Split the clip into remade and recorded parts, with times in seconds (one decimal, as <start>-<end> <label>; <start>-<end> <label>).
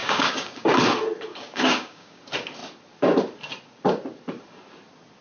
0.0-0.7 remade; 0.7-1.3 recorded; 1.3-2.2 remade; 2.2-5.2 recorded